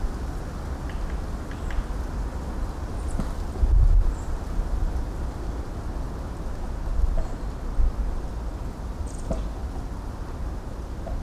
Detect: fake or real real